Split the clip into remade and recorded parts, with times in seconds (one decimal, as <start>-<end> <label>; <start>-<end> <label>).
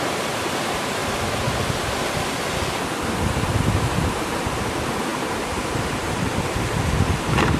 0.0-1.0 remade; 1.0-3.7 recorded; 3.7-7.6 remade